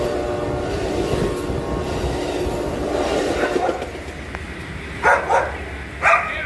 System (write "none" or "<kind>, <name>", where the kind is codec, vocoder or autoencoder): none